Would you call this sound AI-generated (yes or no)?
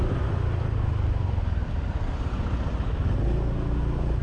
no